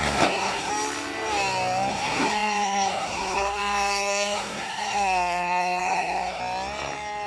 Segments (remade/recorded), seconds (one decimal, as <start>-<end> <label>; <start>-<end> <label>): 0.0-0.7 remade; 0.7-1.9 recorded; 1.9-6.4 remade; 6.4-7.3 recorded